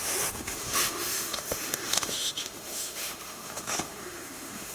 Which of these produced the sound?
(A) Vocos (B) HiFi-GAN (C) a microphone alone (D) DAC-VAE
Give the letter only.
D